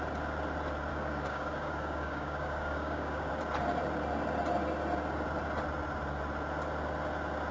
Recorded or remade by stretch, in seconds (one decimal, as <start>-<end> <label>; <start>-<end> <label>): 0.0-0.9 recorded; 0.9-3.3 remade; 3.3-7.5 recorded